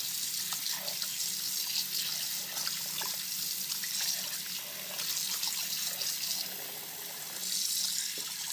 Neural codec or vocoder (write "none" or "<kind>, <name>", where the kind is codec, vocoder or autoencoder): none